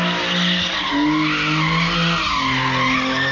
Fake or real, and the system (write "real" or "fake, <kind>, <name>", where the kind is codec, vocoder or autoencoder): real